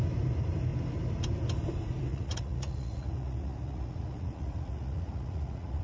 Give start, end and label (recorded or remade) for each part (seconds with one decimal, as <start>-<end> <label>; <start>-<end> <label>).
0.0-2.1 recorded; 2.1-5.8 remade